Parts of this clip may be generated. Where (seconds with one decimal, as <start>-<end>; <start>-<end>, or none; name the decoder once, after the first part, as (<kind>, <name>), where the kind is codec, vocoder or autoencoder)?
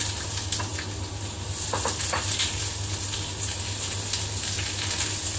none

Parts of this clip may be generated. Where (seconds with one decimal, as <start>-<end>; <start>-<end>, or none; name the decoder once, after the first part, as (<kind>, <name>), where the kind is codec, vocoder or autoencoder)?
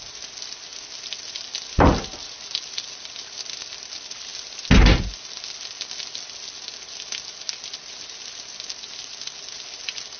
none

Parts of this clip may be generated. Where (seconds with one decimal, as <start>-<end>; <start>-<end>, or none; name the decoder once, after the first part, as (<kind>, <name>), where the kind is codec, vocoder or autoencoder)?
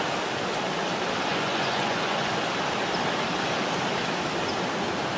1.3-2.3 (vocoder, Vocos)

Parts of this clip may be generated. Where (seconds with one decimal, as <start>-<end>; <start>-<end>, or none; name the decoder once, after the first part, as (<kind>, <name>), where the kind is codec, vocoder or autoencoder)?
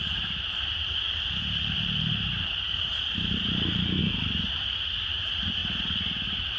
0.0-4.0 (vocoder, BigVGAN v2); 5.0-6.6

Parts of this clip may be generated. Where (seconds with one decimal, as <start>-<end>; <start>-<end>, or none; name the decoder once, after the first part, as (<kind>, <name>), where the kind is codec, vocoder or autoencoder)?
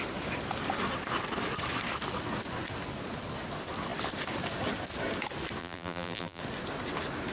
5.6-6.4 (vocoder, BigVGAN v2)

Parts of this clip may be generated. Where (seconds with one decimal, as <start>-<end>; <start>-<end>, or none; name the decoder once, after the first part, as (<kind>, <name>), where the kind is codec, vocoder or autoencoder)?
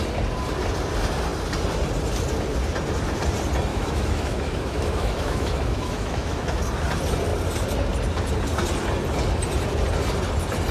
3.7-6.6 (autoencoder, DAC-VAE)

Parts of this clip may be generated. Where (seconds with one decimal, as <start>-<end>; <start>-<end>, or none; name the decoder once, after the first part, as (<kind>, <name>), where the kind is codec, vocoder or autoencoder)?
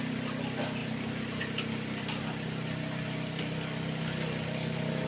none